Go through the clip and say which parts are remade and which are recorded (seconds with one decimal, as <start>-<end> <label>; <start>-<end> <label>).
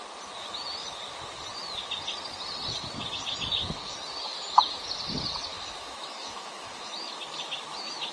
0.0-5.5 recorded; 5.5-7.2 remade; 7.2-8.1 recorded